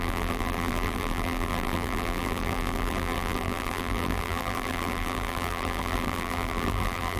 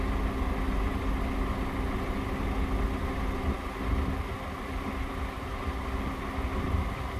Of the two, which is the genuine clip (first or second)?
second